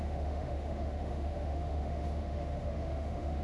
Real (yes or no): no